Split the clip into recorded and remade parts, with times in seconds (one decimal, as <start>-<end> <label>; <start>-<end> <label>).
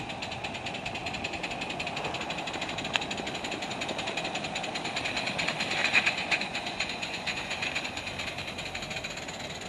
0.0-5.8 recorded; 5.8-8.0 remade; 8.0-9.7 recorded